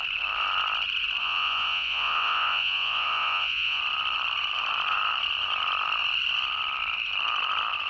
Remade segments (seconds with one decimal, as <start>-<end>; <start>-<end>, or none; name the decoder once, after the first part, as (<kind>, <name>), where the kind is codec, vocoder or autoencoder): 1.2-3.8 (vocoder, Vocos)